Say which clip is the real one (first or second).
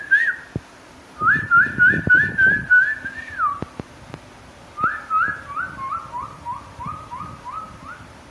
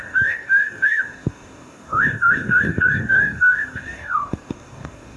first